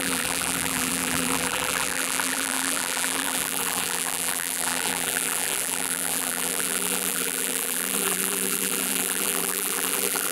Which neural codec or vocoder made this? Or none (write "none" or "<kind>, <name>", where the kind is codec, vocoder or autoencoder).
vocoder, BigVGAN v2